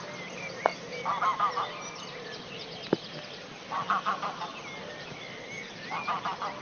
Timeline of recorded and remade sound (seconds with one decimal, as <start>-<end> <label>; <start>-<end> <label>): 0.0-6.6 recorded